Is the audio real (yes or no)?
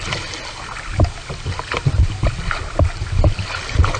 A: yes